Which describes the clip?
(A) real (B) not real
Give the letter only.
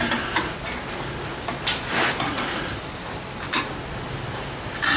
A